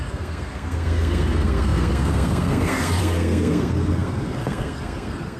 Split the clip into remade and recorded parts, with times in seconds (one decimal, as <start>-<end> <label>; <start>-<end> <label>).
0.0-5.4 remade